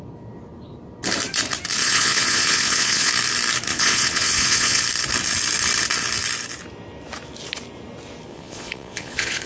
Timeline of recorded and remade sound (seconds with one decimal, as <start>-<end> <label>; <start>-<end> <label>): 0.0-1.8 recorded; 1.8-3.1 remade; 3.1-3.7 recorded; 3.7-4.8 remade; 4.8-8.3 recorded; 8.3-9.5 remade